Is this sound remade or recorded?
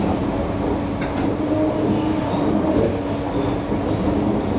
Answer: recorded